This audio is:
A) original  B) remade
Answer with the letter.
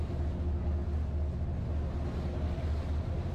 A